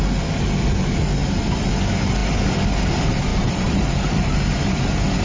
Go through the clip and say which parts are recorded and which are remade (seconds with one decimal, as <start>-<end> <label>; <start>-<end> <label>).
0.0-3.3 recorded; 3.3-4.4 remade; 4.4-5.2 recorded